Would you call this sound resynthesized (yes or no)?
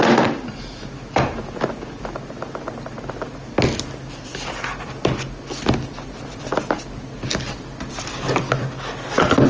no